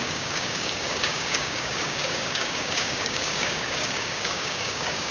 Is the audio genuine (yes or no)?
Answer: no